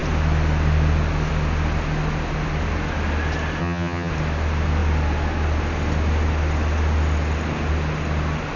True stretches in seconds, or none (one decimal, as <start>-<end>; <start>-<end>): 0.0-3.6; 4.1-8.6